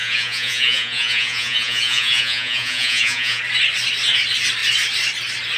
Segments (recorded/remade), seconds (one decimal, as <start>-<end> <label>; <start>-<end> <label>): 0.0-3.4 remade; 3.4-5.6 recorded